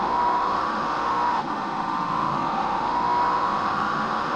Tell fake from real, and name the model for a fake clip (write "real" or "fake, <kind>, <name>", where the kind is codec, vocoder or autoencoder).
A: fake, autoencoder, DAC-VAE